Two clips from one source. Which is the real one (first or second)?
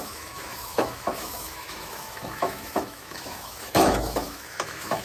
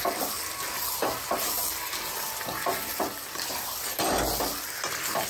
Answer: second